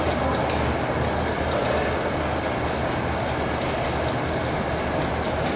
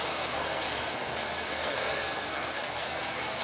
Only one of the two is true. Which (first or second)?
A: first